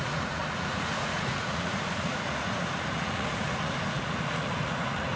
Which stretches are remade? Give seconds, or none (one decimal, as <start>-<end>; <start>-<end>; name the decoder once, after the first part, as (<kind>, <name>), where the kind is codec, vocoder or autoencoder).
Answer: 0.0-5.2 (vocoder, Vocos)